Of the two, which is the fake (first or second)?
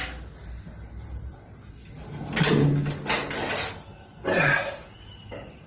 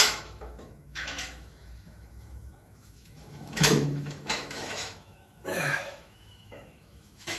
second